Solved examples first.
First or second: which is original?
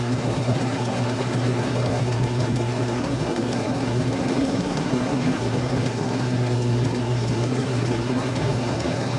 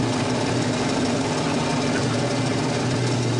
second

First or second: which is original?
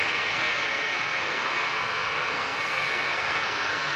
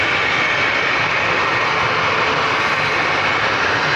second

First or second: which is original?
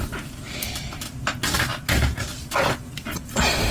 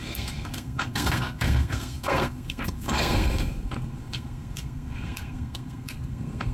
first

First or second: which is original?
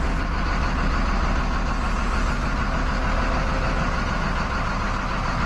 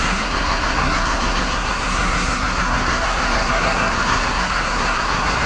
first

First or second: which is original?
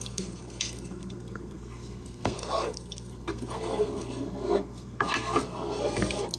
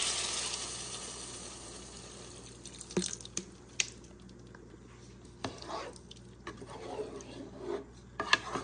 second